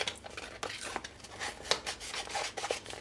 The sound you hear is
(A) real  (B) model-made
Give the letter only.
A